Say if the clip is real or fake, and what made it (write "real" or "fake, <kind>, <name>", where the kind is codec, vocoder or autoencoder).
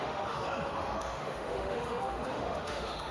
fake, autoencoder, DAC-VAE